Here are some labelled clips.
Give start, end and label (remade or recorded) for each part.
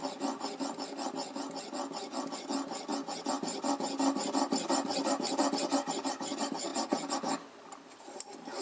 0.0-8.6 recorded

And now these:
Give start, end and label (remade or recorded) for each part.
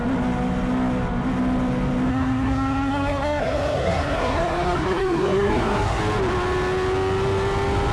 0.0-2.1 recorded; 2.1-6.0 remade; 6.0-7.9 recorded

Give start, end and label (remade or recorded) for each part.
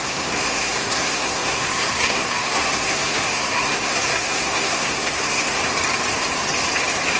0.0-5.6 remade; 5.6-7.2 recorded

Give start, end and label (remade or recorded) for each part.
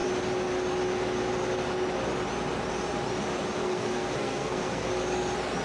0.0-3.6 recorded; 3.6-4.9 remade; 4.9-5.6 recorded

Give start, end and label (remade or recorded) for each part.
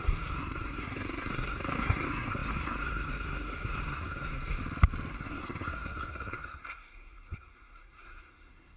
0.0-4.6 remade; 4.6-5.1 recorded; 5.1-8.8 remade